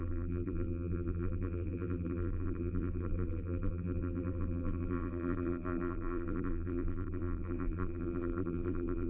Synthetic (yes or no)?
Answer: yes